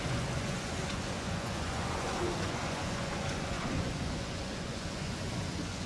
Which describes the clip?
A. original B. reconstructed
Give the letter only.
B